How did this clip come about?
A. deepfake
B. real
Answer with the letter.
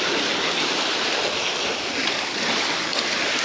B